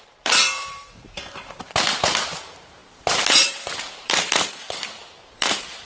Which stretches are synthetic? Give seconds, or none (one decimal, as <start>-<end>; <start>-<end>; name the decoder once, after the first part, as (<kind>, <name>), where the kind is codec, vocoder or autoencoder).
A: 0.0-5.9 (vocoder, BigVGAN v2)